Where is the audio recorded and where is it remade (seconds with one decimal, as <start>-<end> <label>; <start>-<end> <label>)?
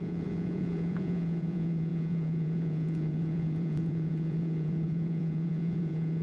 0.0-6.2 remade